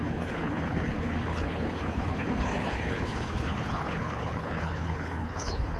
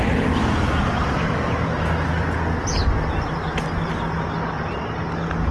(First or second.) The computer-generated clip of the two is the first